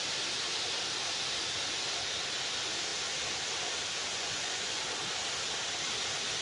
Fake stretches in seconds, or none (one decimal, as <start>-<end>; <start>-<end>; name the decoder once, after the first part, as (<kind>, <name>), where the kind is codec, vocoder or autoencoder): 4.1-4.8 (vocoder, Vocos)